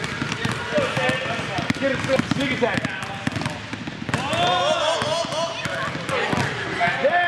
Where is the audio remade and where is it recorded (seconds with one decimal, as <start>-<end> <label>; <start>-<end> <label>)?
0.0-7.3 recorded